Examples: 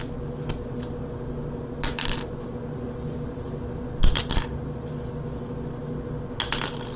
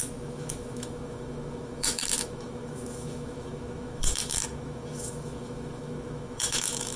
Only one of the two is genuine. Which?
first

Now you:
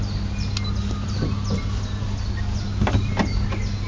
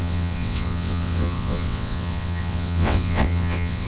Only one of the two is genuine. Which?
first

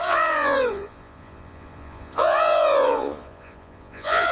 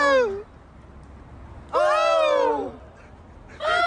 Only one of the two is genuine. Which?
second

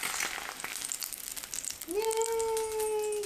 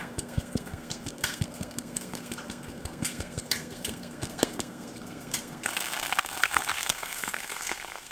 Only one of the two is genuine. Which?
first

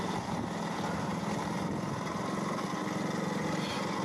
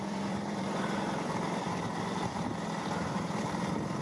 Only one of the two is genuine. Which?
first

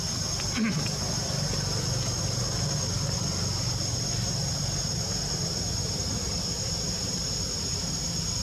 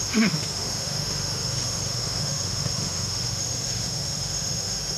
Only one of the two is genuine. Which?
first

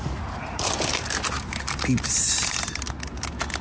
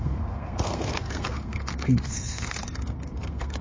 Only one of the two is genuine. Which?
first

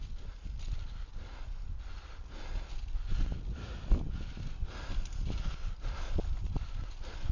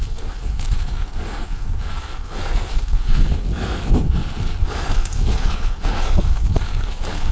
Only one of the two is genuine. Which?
first